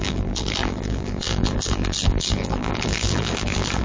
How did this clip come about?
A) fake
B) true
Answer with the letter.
A